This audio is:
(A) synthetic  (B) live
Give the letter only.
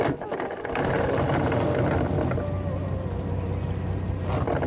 B